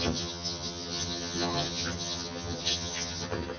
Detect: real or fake fake